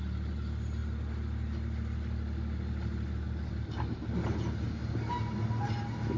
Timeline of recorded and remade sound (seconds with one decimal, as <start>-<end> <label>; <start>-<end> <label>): 0.0-6.2 recorded